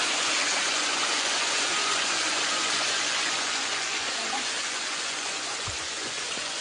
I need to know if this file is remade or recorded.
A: remade